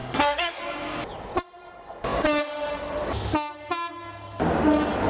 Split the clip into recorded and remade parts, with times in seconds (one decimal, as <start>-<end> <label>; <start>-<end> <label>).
0.0-0.6 remade; 0.6-5.1 recorded

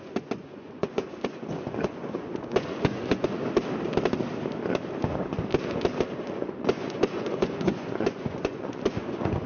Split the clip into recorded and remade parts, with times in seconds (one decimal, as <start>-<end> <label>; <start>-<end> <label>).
0.0-3.4 remade; 3.4-6.2 recorded; 6.2-9.5 remade

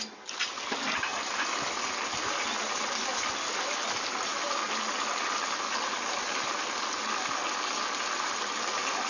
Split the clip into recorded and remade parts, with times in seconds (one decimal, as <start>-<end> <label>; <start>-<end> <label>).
0.0-9.1 recorded

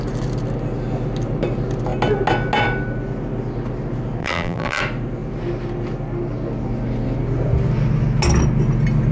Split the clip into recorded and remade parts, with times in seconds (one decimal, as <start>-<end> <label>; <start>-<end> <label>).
0.0-4.2 recorded; 4.2-4.8 remade; 4.8-9.1 recorded

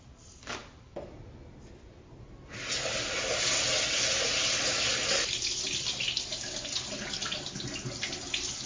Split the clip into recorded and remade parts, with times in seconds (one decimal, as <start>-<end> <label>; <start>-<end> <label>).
0.0-8.7 recorded

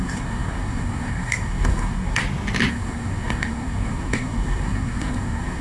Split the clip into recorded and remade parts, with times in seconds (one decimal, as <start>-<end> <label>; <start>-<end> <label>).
0.0-2.2 remade; 2.2-2.7 recorded; 2.7-5.6 remade